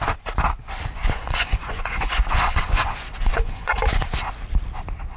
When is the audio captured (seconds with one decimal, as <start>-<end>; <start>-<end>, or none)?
0.0-0.6; 3.7-5.2